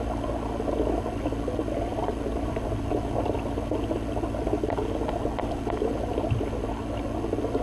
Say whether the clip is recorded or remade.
recorded